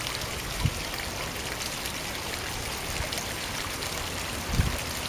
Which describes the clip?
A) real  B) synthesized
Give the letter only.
A